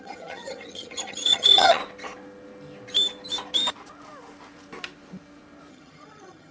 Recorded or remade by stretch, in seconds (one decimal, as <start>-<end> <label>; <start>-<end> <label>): 0.0-1.8 remade; 1.8-5.7 recorded; 5.7-6.5 remade